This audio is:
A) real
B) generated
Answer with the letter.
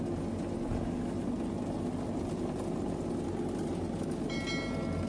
A